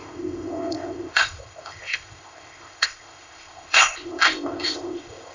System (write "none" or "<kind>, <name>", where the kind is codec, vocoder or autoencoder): codec, ZipCodec